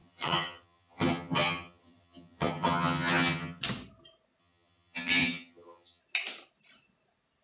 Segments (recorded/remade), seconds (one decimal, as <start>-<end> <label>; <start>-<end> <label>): 0.0-3.6 remade; 3.6-4.4 recorded; 4.4-6.0 remade; 6.0-7.4 recorded